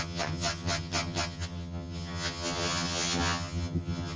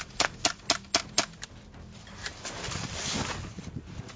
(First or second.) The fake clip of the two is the first